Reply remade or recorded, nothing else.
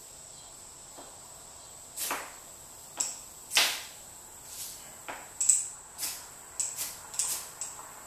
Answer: recorded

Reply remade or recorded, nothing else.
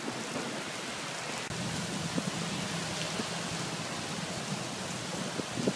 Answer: recorded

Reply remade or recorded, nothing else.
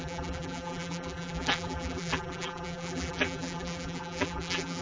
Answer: remade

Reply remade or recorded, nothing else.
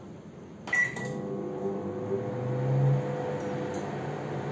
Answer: recorded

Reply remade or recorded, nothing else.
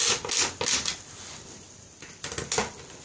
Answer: recorded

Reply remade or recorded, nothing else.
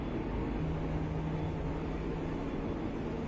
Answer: recorded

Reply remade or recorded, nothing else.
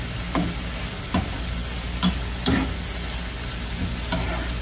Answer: recorded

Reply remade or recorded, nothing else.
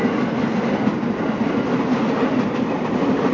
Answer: recorded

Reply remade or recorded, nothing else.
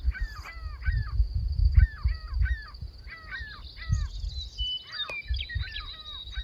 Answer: recorded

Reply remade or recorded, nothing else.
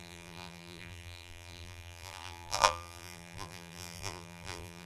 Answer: remade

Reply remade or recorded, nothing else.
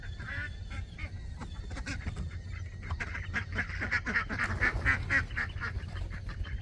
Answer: recorded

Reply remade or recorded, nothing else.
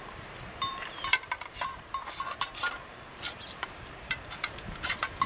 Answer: remade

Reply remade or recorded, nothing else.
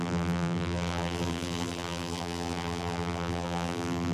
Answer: remade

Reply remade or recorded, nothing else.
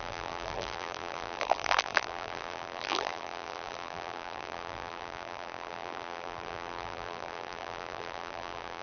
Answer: remade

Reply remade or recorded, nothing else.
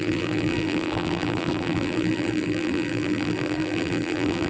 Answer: remade